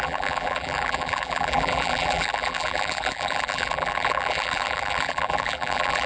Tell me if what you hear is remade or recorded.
remade